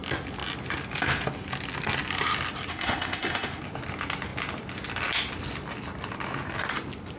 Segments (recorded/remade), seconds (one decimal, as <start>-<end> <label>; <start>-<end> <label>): 0.0-2.7 recorded; 2.7-3.6 remade; 3.6-7.2 recorded